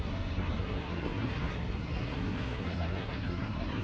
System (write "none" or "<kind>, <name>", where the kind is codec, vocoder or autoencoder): codec, SNAC